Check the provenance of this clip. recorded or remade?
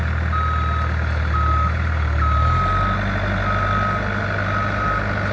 recorded